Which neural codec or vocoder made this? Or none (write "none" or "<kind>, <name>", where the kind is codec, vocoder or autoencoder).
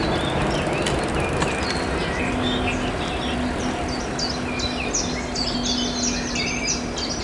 none